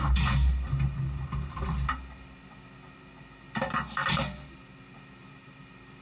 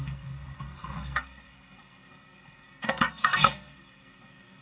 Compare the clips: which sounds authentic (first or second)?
first